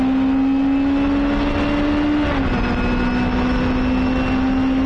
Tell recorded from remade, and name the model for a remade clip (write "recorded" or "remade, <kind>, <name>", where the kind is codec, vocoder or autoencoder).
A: recorded